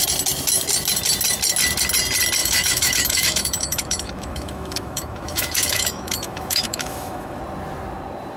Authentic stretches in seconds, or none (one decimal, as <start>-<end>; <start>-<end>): 0.0-2.4; 7.4-8.4